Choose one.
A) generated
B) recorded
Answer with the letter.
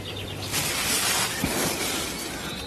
B